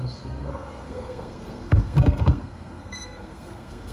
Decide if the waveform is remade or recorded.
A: remade